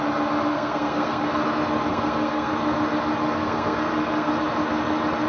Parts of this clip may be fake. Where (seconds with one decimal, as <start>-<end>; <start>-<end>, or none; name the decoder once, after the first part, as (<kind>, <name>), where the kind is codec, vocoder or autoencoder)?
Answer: 0.5-1.2 (codec, SNAC); 1.9-2.5; 3.4-4.3